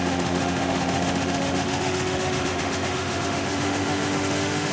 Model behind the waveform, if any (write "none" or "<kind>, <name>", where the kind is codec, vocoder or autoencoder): autoencoder, DAC-VAE